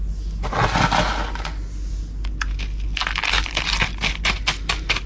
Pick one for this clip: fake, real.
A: real